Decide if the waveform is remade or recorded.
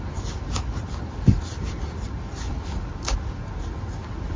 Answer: recorded